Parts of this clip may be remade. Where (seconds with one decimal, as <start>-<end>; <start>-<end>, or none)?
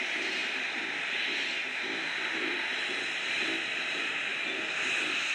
none